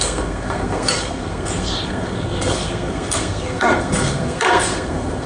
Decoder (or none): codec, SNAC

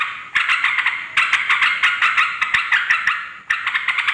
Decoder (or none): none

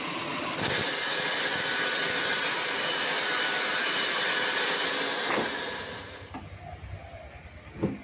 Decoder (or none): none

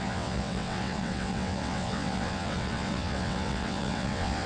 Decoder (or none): vocoder, WaveNeXt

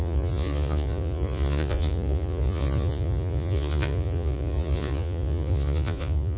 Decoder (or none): vocoder, Vocos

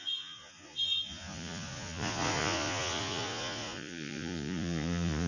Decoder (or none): vocoder, Vocos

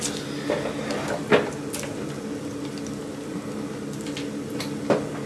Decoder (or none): none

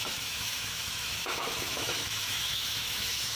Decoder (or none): autoencoder, DAC-VAE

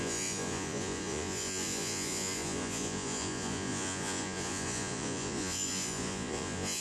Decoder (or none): vocoder, Vocos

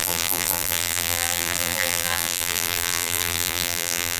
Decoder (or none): vocoder, BigVGAN v2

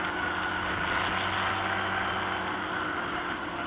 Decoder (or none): none